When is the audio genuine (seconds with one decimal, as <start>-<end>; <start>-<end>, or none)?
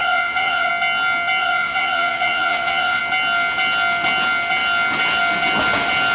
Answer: 0.7-1.4; 3.0-6.1